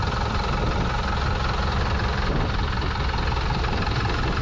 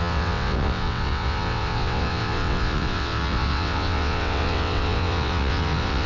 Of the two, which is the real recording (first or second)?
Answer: first